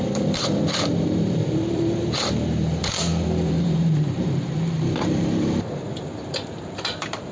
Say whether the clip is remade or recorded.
remade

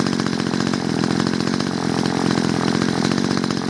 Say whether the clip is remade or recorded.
recorded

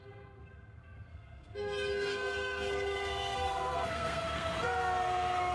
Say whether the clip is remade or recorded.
remade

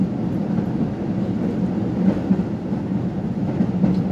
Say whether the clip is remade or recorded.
recorded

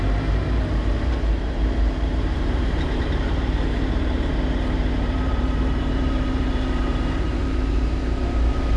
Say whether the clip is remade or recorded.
remade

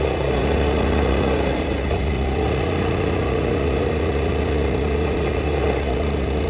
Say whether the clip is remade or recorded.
remade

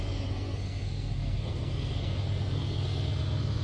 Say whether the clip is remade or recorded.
remade